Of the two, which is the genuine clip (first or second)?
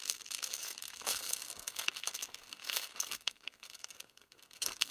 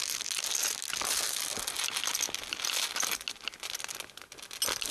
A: second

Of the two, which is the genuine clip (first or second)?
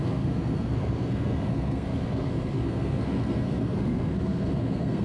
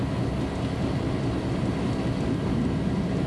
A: second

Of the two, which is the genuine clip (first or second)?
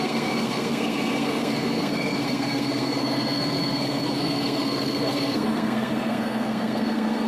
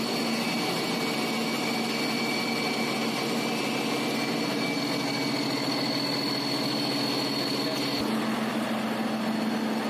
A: second